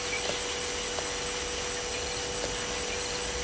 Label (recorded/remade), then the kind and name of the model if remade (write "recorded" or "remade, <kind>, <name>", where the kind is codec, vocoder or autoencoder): recorded